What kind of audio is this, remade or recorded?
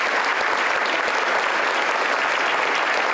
recorded